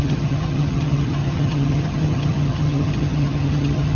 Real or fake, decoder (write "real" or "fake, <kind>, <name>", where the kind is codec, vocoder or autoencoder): fake, vocoder, HiFi-GAN